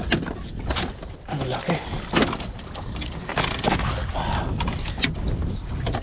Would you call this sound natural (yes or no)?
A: yes